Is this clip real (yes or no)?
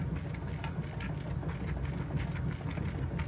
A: yes